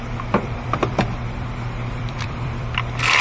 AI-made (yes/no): yes